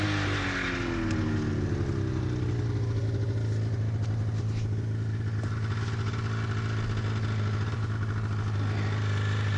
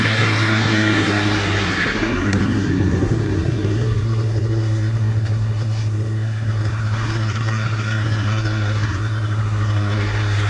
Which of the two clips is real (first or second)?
first